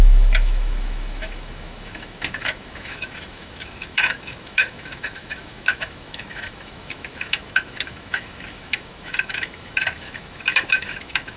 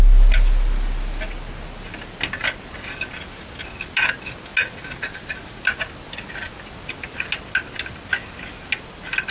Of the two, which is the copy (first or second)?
first